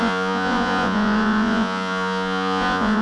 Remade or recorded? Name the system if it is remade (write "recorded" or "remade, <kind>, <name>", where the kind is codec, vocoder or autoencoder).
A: remade, vocoder, Vocos